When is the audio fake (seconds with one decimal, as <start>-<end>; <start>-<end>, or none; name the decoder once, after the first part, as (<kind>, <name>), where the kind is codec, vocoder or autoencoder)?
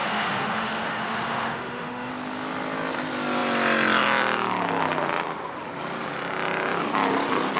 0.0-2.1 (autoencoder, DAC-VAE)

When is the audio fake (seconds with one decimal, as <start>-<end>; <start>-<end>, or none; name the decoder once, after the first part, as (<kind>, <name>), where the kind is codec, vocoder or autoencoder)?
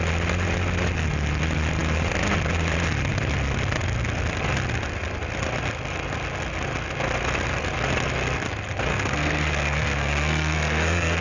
8.9-11.2 (codec, SNAC)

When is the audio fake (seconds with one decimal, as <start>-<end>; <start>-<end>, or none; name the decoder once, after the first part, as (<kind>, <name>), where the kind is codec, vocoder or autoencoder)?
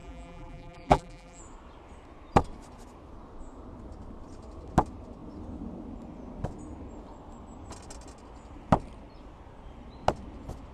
0.0-1.4 (vocoder, BigVGAN v2)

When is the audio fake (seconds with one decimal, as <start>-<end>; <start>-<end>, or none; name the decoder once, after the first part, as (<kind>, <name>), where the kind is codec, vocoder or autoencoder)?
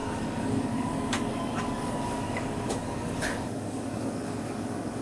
0.0-5.0 (codec, DAC)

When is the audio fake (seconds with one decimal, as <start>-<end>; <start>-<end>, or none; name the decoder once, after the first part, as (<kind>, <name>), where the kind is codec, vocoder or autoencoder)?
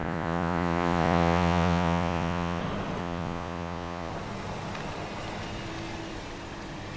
0.0-2.6 (vocoder, Vocos); 3.0-4.1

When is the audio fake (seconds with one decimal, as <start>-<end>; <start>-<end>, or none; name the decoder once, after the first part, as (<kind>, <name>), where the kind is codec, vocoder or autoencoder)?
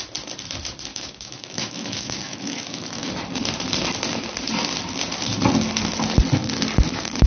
0.9-3.1 (autoencoder, DAC-VAE)